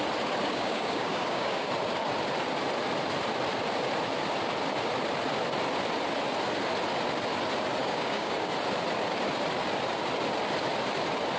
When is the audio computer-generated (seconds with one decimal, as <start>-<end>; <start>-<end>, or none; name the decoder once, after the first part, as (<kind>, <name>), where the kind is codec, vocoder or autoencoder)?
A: 0.5-1.7 (codec, DAC); 7.8-8.5